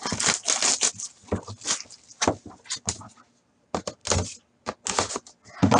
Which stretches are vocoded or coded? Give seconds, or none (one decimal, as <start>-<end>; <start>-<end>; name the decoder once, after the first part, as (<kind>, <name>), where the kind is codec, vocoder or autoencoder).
none